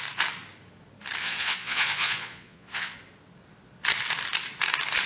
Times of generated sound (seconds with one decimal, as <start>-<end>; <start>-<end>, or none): 1.2-3.0